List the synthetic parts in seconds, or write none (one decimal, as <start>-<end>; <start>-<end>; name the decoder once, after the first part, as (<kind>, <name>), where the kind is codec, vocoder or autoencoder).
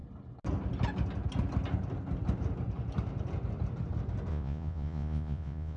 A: 4.3-5.8 (vocoder, Vocos)